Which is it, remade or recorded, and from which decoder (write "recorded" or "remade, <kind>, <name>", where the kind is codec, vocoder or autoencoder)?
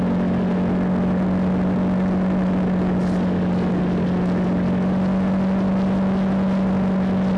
recorded